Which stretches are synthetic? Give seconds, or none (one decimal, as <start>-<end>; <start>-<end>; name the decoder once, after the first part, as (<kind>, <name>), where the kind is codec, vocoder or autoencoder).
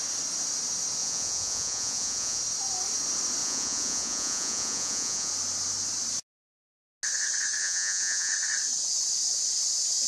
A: 1.0-2.4 (vocoder, Vocos); 3.4-5.3; 7.6-8.3